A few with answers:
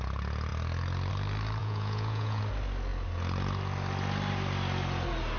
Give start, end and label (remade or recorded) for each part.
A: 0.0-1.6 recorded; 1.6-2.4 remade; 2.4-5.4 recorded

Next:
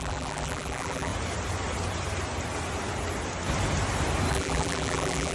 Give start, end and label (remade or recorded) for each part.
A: 0.0-1.1 remade; 1.1-4.3 recorded; 4.3-5.3 remade